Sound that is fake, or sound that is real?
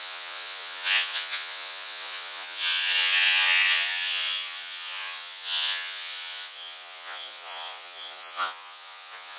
fake